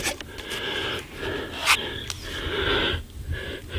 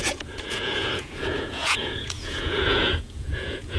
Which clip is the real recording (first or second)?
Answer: first